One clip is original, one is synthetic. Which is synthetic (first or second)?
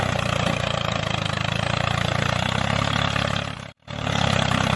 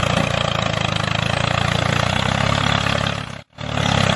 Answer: first